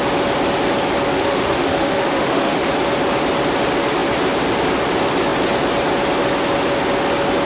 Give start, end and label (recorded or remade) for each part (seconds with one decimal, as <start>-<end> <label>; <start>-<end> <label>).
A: 0.0-1.1 recorded; 1.1-2.7 remade; 2.7-7.5 recorded